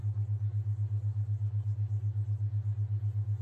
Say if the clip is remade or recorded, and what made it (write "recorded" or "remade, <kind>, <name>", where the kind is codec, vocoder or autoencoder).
recorded